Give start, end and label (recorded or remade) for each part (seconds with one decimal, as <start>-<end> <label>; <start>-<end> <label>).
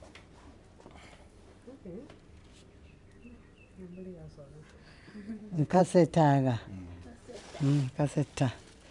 0.0-4.8 recorded; 4.8-5.8 remade; 5.8-8.9 recorded